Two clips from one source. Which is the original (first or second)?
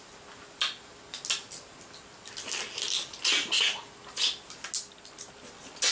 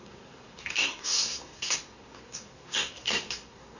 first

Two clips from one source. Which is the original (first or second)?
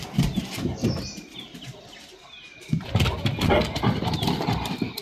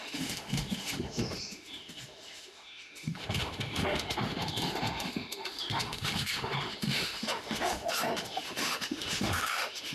first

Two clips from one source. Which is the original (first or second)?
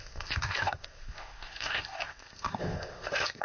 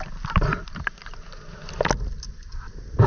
second